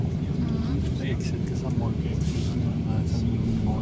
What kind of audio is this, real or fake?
fake